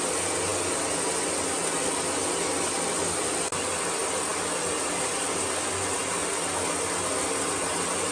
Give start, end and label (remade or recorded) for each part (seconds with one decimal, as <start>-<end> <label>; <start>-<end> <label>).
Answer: 0.0-8.1 recorded